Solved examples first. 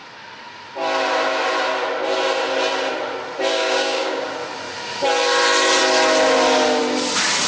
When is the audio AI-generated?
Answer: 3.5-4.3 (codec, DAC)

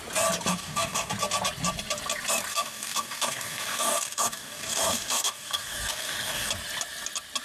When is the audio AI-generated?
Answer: 0.5-1.1 (codec, DAC); 2.5-6.5

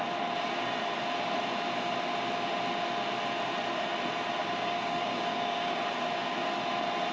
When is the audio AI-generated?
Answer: 4.4-5.8 (codec, DAC)

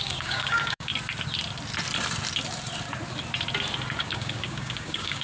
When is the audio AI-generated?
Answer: 0.0-0.9 (codec, DAC); 4.0-5.2

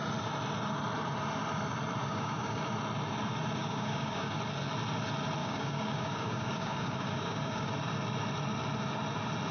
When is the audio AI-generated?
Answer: 2.1-2.7 (codec, DAC); 3.6-4.4; 5.4-7.7

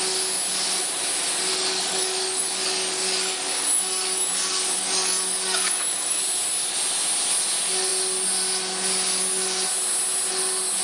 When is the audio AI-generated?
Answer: 1.5-6.2 (codec, DAC)

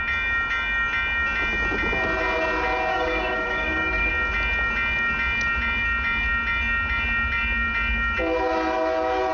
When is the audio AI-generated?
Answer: 2.9-4.1 (codec, DAC)

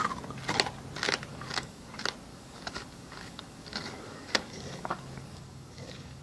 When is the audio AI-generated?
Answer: 1.3-1.9 (codec, DAC); 2.3-6.2